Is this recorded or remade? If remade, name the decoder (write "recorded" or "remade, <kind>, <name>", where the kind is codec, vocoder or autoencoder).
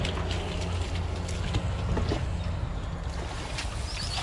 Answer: recorded